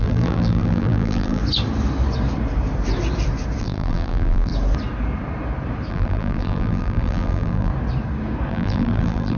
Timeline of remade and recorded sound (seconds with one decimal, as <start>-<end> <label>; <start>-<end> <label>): 0.0-1.4 remade; 1.4-3.6 recorded; 3.6-4.5 remade; 4.5-5.9 recorded; 5.9-7.7 remade; 7.7-8.5 recorded; 8.5-9.4 remade